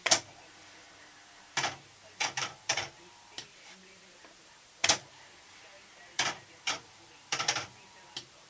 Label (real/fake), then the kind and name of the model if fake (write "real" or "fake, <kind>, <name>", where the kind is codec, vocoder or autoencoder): fake, vocoder, BigVGAN v2